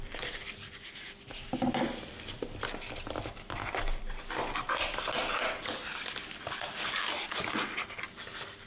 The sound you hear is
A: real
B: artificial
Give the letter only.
A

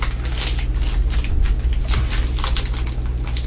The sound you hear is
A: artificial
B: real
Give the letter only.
B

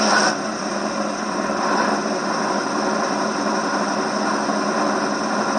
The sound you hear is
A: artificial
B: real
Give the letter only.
B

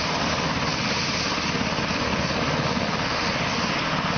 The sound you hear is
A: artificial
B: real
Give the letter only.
B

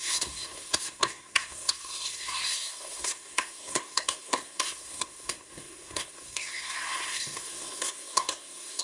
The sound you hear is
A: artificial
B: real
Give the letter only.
A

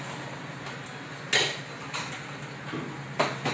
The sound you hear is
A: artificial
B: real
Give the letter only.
B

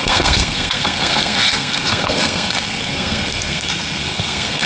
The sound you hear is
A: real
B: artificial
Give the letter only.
B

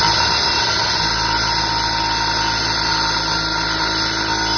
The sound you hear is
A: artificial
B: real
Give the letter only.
B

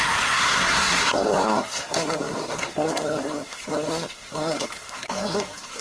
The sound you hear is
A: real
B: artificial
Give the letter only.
B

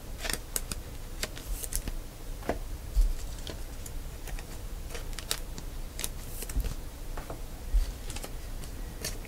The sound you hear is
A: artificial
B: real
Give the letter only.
A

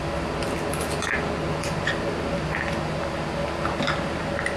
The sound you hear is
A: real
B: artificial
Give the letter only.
A